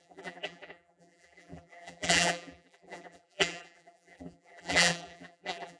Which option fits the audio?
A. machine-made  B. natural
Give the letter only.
A